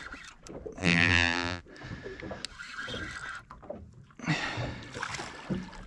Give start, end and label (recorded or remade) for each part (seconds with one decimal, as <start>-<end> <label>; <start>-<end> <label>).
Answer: 0.0-0.8 recorded; 0.8-1.6 remade; 1.6-5.9 recorded